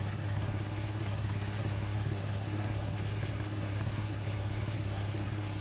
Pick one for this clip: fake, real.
fake